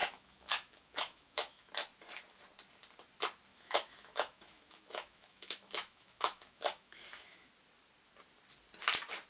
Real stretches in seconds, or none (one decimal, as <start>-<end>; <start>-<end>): 1.7-3.5; 7.5-9.3